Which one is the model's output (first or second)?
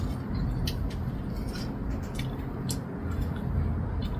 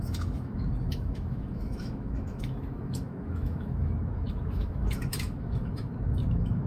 second